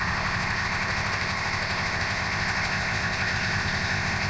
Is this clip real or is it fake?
fake